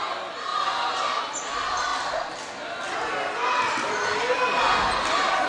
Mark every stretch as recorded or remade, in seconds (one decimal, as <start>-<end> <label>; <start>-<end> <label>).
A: 0.0-5.5 recorded